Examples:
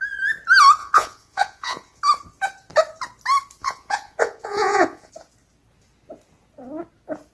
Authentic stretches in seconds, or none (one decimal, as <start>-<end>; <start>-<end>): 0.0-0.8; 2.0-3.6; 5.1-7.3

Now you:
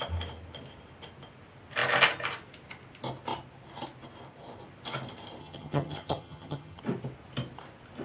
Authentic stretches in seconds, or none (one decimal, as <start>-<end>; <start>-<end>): 0.0-5.4; 6.8-8.0

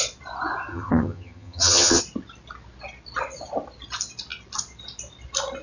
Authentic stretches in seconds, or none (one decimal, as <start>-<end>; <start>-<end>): 0.0-0.7; 2.0-5.6